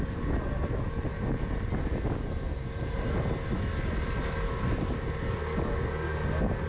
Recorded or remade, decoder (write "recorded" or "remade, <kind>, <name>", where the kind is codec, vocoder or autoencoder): recorded